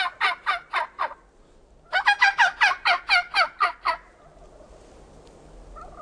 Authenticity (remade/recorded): recorded